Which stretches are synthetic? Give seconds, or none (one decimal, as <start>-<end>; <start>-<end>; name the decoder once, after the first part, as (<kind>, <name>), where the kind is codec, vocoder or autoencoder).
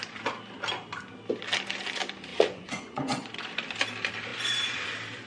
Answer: 2.3-3.5 (vocoder, Vocos)